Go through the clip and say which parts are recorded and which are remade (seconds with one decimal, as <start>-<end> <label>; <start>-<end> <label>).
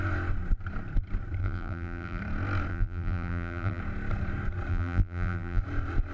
0.0-1.4 recorded; 1.4-2.2 remade; 2.2-2.7 recorded; 2.7-3.8 remade; 3.8-4.7 recorded; 4.7-5.6 remade; 5.6-6.1 recorded